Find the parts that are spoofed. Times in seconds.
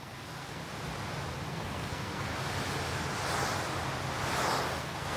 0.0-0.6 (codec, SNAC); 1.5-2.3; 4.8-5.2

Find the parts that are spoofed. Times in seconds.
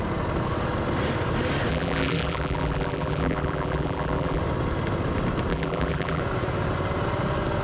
1.7-4.4 (vocoder, BigVGAN v2); 5.5-6.2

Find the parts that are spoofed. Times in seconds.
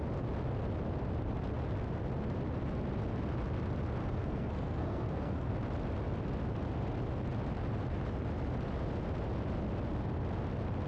4.0-5.5 (codec, SNAC)